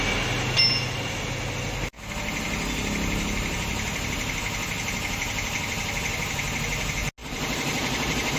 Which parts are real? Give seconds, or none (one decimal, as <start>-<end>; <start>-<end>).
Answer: 0.0-8.4